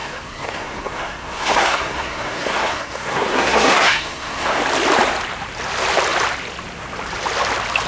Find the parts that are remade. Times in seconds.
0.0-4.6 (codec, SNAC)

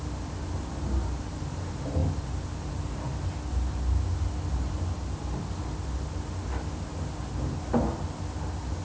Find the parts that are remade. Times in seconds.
none

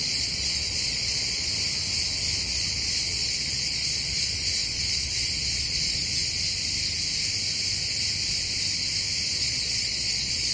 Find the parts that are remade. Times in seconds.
0.0-1.5 (vocoder, Vocos); 2.4-6.2; 9.4-10.5

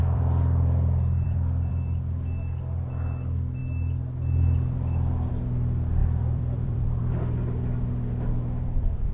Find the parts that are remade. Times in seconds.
0.0-1.7 (vocoder, BigVGAN v2); 6.0-7.0

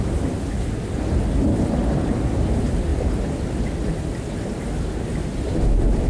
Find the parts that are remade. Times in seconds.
none

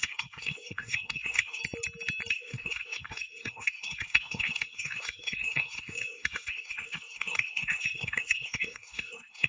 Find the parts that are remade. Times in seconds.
0.0-1.6 (codec, SNAC); 2.3-9.5